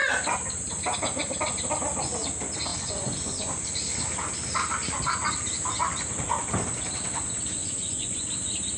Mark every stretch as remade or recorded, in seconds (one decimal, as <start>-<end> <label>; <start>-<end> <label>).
0.0-2.7 recorded; 2.7-3.5 remade; 3.5-7.6 recorded; 7.6-8.3 remade; 8.3-8.8 recorded